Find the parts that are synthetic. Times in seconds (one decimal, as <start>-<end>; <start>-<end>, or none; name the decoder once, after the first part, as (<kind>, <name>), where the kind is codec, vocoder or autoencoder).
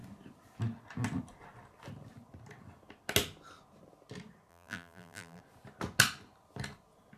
4.5-5.4 (vocoder, BigVGAN v2)